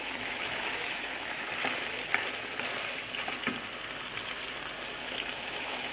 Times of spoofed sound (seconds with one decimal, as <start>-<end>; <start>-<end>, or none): 0.0-1.5; 5.0-5.9

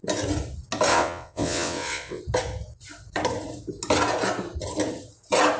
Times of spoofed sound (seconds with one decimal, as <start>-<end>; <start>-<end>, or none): 0.9-2.2